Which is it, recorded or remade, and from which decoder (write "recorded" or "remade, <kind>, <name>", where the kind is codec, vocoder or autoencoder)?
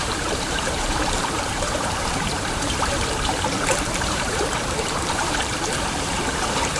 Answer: remade, vocoder, BigVGAN v2